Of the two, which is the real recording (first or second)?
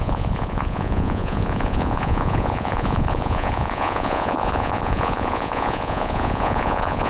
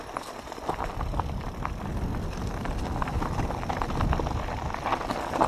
second